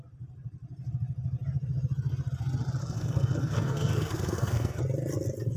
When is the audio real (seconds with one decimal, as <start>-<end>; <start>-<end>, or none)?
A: 0.0-2.8; 4.8-5.6